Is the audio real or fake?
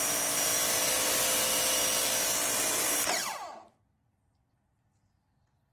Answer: real